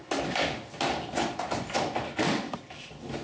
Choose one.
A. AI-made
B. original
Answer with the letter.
B